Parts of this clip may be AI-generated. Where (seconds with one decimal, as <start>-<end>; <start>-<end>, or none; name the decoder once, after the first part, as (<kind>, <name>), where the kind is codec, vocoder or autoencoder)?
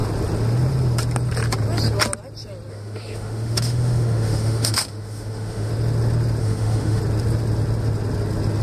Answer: 2.7-5.7 (autoencoder, DAC-VAE); 6.4-7.0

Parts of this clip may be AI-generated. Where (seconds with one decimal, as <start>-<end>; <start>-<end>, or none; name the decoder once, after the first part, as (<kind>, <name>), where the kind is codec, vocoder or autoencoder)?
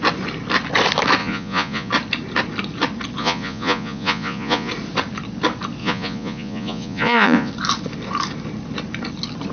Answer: 1.2-1.9 (vocoder, Vocos); 3.2-4.7; 5.8-7.5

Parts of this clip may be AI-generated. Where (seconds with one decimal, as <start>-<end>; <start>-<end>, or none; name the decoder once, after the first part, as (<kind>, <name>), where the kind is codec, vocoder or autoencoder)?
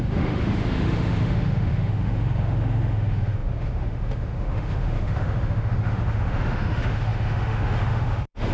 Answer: 0.0-8.5 (autoencoder, DAC-VAE)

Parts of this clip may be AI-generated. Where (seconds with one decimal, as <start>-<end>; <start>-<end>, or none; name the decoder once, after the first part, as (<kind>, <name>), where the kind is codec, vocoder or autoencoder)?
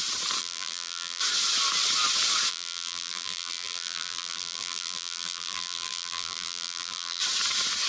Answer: 0.4-1.2 (vocoder, BigVGAN v2); 2.5-7.2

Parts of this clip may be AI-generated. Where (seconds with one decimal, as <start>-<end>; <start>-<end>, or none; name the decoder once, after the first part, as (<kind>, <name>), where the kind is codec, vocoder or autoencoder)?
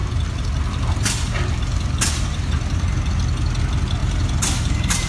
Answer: 0.0-3.1 (vocoder, BigVGAN v2); 4.0-5.1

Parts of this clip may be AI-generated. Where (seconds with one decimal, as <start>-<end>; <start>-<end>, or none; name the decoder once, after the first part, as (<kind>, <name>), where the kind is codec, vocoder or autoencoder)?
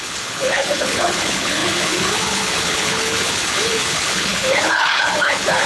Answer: 0.0-5.7 (codec, HILCodec)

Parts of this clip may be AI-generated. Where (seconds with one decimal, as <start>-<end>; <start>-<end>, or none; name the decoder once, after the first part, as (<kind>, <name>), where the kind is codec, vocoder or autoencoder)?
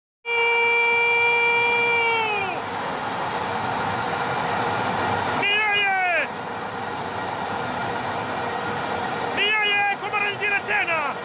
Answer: none